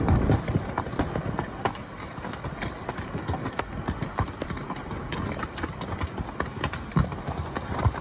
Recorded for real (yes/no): yes